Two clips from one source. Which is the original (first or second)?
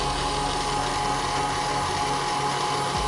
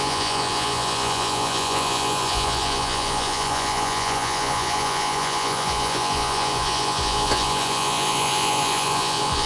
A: first